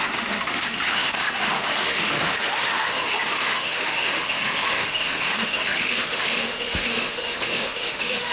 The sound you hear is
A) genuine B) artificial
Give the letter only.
B